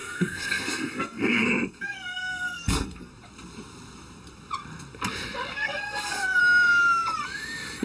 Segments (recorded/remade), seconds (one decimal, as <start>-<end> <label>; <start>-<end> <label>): 0.0-3.1 remade; 3.1-5.5 recorded; 5.5-6.4 remade; 6.4-7.8 recorded

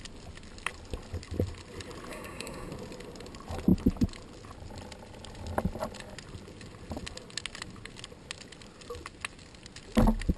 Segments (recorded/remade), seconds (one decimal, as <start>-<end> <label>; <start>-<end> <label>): 0.0-2.1 recorded; 2.1-2.7 remade; 2.7-10.4 recorded

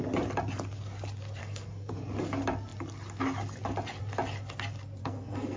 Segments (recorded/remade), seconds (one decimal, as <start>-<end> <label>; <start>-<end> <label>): 0.0-1.4 recorded; 1.4-1.9 remade; 1.9-5.0 recorded; 5.0-5.6 remade

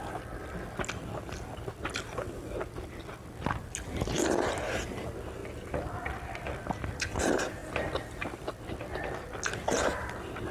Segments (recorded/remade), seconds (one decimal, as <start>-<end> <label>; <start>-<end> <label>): 0.0-10.5 recorded

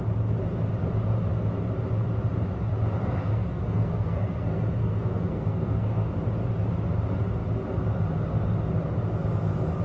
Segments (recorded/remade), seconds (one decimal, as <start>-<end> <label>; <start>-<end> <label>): 0.0-3.3 recorded; 3.3-6.1 remade; 6.1-9.8 recorded

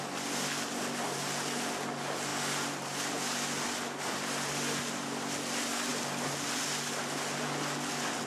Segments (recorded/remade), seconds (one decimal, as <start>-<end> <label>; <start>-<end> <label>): 0.0-8.3 recorded

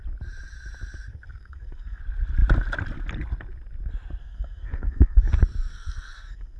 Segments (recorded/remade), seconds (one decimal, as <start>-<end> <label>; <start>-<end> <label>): 0.0-1.1 recorded; 1.1-2.0 remade; 2.0-4.2 recorded; 4.2-5.3 remade; 5.3-5.7 recorded; 5.7-6.6 remade